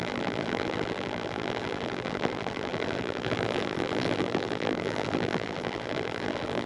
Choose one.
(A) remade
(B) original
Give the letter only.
A